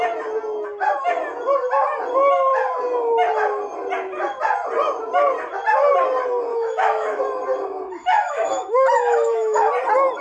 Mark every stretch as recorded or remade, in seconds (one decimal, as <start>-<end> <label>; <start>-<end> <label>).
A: 0.0-6.5 recorded; 6.5-7.2 remade; 7.2-8.0 recorded; 8.0-9.7 remade; 9.7-10.2 recorded